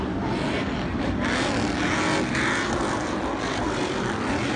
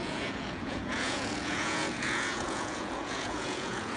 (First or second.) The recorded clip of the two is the first